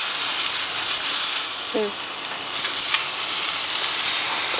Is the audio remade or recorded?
recorded